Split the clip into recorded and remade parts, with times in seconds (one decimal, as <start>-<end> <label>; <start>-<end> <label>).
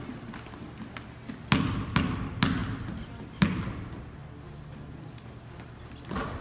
0.0-6.4 recorded